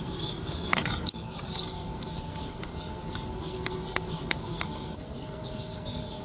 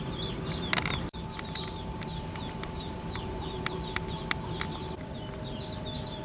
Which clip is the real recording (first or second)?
second